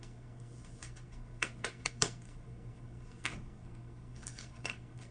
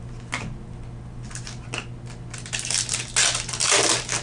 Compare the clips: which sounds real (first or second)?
second